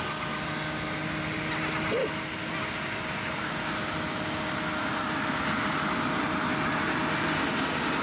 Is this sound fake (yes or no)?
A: no